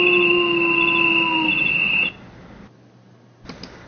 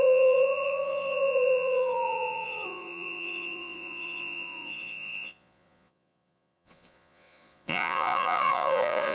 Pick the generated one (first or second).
second